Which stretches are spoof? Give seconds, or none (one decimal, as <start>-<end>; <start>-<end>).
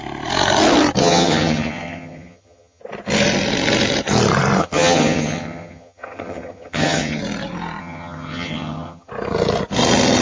1.0-2.8; 4.6-7.2; 7.8-9.1